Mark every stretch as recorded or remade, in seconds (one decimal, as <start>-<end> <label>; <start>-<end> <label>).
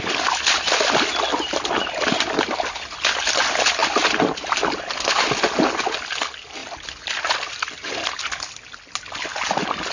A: 0.0-9.9 recorded